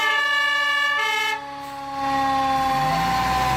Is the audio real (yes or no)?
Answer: yes